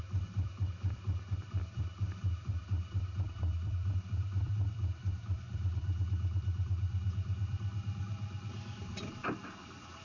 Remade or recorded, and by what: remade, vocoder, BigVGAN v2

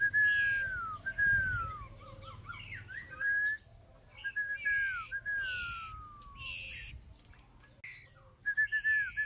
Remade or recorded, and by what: recorded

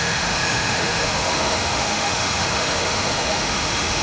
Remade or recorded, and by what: remade, autoencoder, DAC-VAE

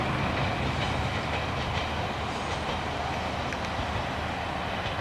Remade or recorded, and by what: recorded